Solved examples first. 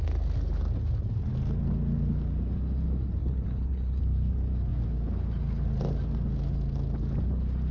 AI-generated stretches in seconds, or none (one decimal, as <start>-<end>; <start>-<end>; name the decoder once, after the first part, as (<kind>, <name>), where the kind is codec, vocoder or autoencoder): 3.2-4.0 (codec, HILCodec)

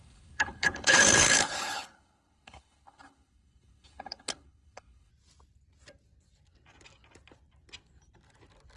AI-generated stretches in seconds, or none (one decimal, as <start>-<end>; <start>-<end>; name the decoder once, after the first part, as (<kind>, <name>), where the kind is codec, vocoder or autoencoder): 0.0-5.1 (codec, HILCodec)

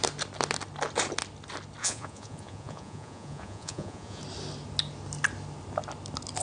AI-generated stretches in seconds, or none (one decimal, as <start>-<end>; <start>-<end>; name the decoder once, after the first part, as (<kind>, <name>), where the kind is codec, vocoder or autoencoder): 1.8-4.2 (vocoder, Vocos)